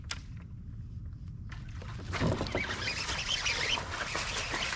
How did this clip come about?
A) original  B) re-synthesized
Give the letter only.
A